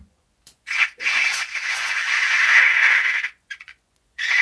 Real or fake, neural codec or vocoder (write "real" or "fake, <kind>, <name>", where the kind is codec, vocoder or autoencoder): fake, vocoder, Vocos